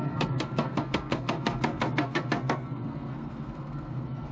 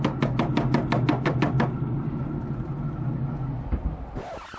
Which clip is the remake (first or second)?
first